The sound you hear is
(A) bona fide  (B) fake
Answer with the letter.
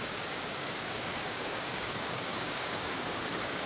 B